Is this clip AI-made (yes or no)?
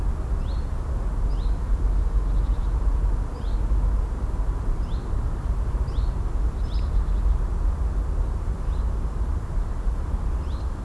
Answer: no